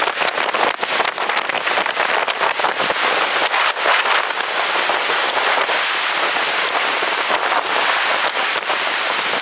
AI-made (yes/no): yes